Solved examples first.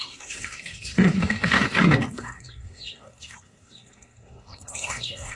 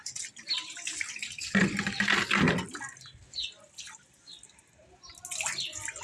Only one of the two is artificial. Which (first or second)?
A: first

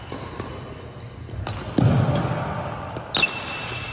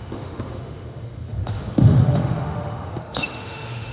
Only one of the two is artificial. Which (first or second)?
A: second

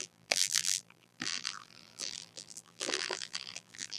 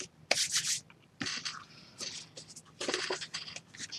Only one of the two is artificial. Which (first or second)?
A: first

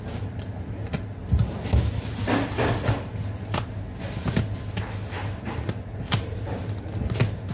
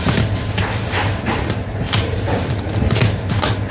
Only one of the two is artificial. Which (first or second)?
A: second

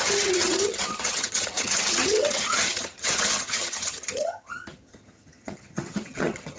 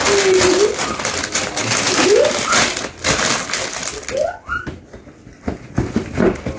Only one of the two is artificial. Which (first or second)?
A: first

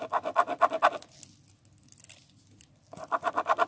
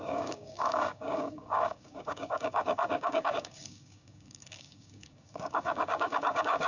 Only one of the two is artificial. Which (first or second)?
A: second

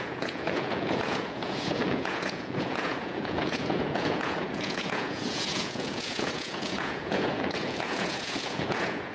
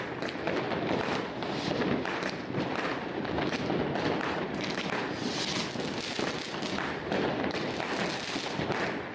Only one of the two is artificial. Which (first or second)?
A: first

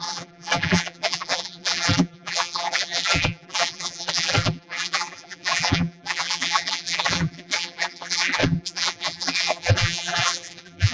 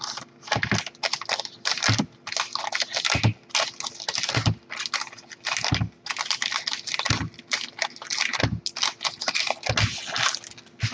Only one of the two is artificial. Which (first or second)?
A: first